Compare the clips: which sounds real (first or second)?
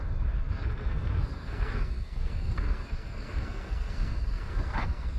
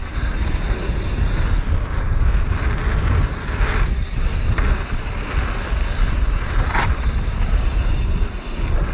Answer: second